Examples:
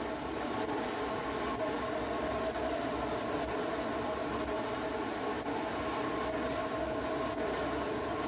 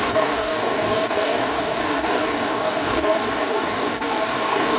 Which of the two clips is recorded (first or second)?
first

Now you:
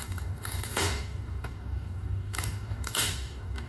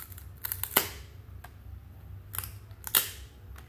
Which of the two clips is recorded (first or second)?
second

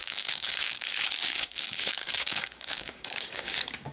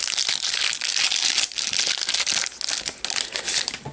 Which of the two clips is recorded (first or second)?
second